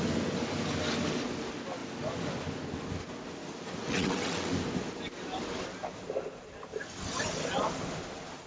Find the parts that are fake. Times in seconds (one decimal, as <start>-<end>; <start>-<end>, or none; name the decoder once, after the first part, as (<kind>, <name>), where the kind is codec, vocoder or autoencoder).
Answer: 3.8-4.5 (vocoder, WaveNeXt)